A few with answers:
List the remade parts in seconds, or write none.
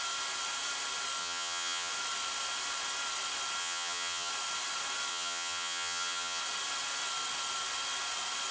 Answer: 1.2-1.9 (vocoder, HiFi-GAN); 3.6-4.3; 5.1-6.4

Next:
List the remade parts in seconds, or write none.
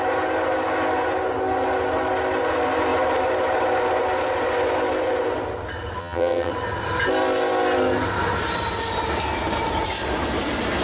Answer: 6.0-6.5 (vocoder, HiFi-GAN)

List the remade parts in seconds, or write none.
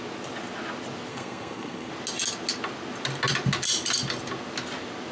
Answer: 1.1-1.9 (codec, SNAC)